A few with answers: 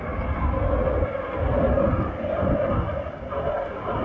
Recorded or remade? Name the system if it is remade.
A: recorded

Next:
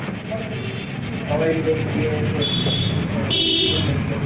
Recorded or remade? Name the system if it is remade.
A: recorded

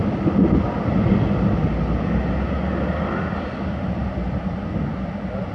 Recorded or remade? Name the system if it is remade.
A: recorded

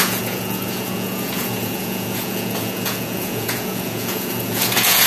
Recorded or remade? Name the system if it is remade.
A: remade, vocoder, Vocos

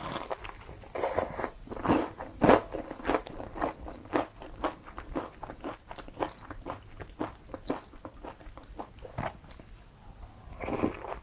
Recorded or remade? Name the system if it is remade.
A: recorded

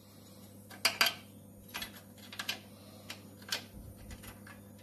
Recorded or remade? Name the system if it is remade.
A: recorded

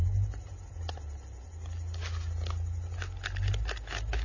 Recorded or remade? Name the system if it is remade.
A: recorded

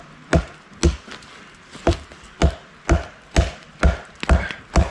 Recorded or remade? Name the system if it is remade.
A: recorded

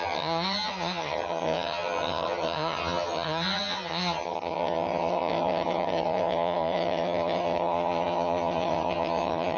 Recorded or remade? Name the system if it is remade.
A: remade, vocoder, HiFi-GAN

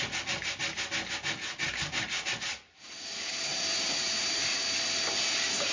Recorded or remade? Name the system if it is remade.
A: recorded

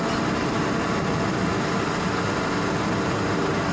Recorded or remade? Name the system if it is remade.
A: recorded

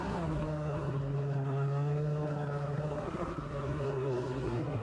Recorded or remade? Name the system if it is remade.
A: remade, codec, SNAC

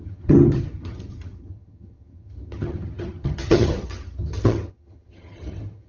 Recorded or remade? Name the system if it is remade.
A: remade, vocoder, HiFi-GAN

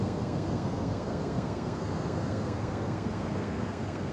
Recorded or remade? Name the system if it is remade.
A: remade, codec, SNAC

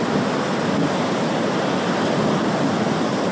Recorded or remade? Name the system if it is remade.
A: recorded